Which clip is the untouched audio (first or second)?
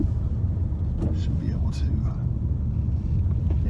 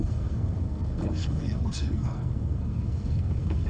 first